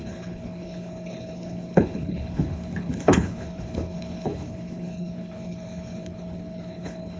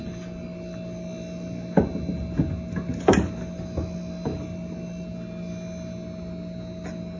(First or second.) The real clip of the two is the second